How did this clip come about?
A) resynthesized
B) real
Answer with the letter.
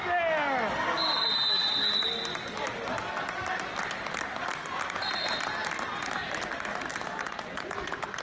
B